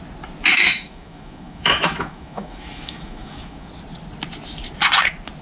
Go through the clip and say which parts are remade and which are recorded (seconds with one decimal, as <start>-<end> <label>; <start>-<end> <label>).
0.0-0.5 recorded; 0.5-3.7 remade; 3.7-5.4 recorded